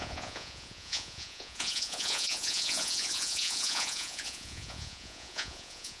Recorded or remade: remade